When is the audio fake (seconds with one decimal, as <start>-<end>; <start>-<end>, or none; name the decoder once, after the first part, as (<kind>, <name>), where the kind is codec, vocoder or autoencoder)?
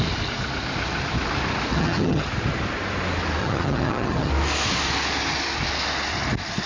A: 1.7-2.3 (vocoder, HiFi-GAN); 3.4-4.3